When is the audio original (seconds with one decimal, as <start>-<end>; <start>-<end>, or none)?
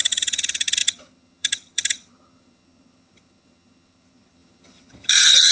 none